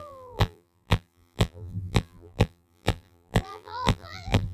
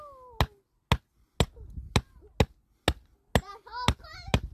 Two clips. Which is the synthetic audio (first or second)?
first